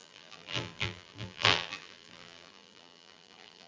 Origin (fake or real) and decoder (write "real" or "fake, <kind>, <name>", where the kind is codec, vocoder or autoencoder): fake, vocoder, BigVGAN v2